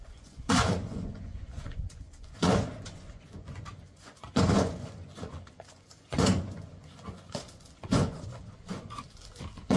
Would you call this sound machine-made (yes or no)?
yes